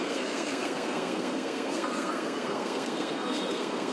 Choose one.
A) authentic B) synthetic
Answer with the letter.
B